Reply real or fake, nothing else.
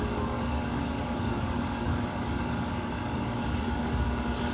fake